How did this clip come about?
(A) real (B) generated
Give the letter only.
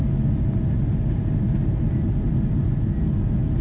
A